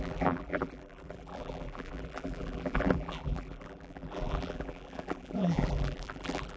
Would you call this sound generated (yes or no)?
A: yes